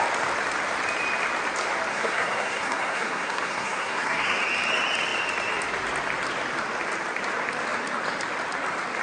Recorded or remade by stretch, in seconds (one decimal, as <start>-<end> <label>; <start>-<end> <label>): 0.0-1.9 recorded; 1.9-4.4 remade; 4.4-9.0 recorded